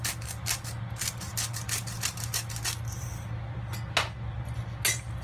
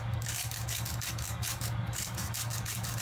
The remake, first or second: second